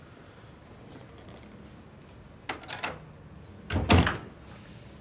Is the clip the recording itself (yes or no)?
yes